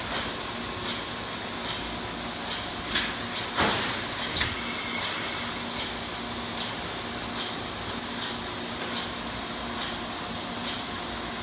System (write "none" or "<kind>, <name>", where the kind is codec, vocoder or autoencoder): none